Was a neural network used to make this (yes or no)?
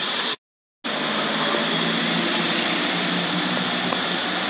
no